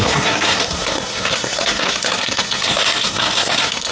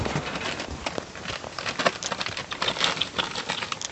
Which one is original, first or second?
second